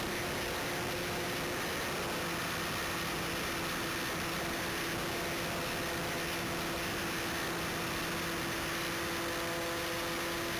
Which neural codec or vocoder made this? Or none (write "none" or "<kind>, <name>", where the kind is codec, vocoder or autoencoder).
none